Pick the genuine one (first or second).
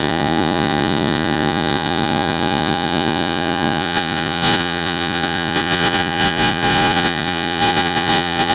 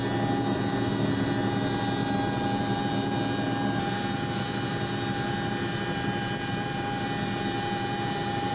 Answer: second